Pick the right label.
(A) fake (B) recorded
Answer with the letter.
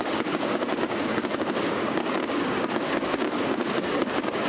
A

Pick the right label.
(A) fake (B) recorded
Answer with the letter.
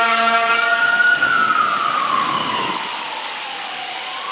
A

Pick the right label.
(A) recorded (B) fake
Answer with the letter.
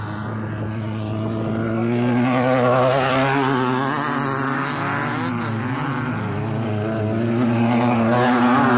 A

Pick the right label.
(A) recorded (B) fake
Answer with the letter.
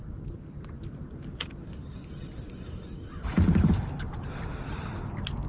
A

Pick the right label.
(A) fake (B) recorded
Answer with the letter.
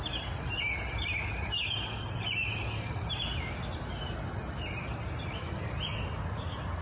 B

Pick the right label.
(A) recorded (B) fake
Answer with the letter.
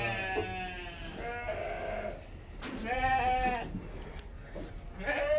A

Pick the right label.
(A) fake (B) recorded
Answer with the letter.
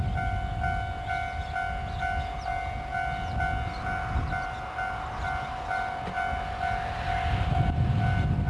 B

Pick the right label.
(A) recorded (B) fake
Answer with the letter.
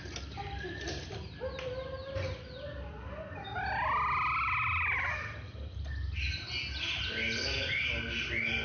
A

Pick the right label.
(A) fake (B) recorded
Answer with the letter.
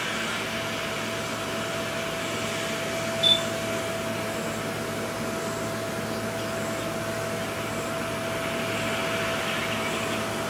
B